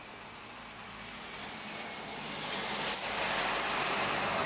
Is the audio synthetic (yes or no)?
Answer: no